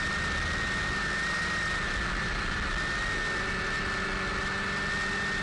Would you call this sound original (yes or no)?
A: yes